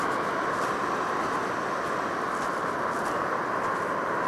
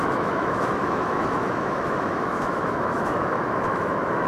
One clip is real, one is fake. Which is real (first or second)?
first